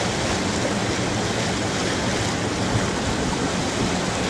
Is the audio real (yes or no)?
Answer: yes